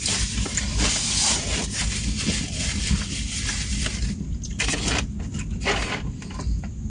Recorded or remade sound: recorded